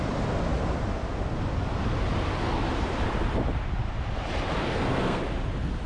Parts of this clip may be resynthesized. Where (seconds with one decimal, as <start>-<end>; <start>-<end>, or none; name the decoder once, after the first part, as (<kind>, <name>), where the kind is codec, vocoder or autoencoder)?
4.7-5.2 (codec, SNAC)